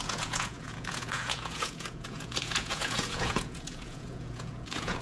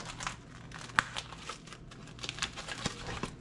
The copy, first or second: first